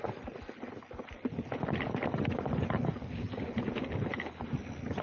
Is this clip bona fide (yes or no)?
yes